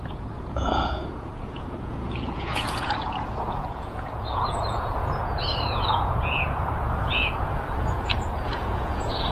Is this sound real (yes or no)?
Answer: no